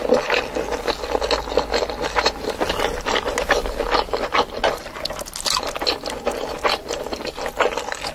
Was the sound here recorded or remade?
recorded